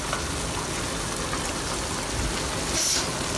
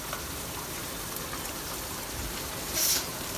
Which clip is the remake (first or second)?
second